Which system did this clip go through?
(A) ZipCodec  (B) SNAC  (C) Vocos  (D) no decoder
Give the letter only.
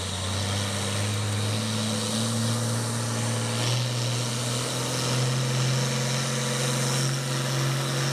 D